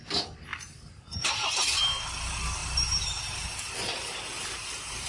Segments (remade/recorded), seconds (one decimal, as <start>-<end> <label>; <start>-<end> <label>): 0.0-0.5 recorded; 0.5-1.4 remade; 1.4-2.6 recorded; 2.6-5.1 remade